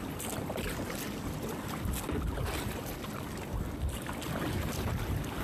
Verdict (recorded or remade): recorded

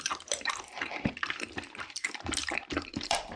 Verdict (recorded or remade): remade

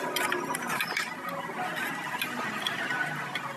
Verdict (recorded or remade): recorded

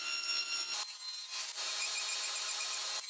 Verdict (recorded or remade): recorded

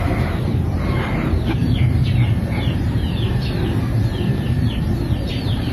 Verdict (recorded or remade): remade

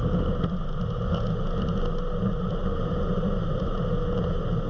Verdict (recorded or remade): recorded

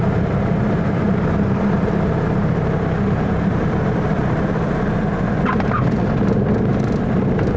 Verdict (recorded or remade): remade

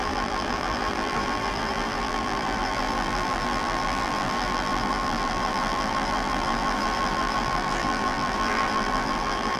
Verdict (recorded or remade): remade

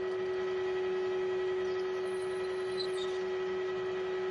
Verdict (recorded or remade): recorded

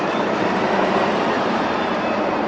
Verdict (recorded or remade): remade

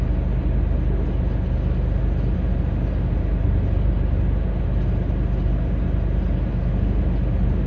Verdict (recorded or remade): recorded